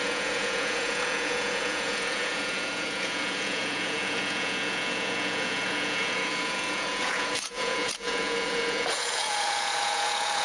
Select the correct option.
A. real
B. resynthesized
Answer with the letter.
B